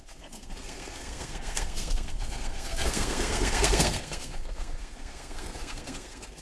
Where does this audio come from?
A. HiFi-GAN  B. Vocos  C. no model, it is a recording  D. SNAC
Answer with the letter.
D